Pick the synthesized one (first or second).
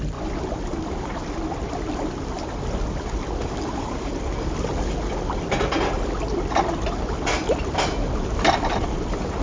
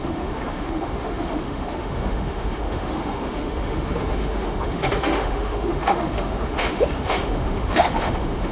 second